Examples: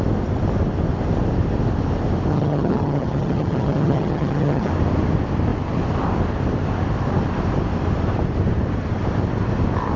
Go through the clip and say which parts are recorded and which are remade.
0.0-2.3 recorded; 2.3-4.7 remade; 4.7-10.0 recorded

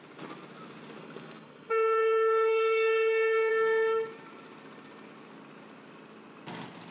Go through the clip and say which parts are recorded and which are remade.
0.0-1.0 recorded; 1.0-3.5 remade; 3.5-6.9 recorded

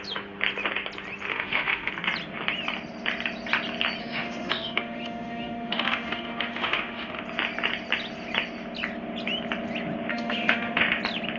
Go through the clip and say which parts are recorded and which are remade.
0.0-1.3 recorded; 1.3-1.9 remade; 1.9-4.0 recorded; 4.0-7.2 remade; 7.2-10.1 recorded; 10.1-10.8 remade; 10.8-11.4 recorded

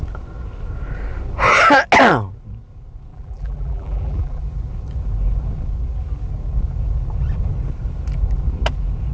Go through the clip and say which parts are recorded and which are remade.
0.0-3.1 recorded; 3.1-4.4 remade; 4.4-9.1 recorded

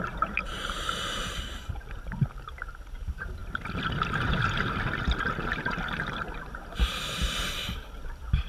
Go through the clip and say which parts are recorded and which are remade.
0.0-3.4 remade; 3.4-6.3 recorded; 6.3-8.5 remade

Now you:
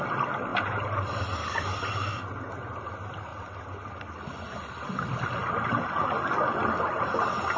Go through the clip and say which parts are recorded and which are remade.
0.0-7.6 recorded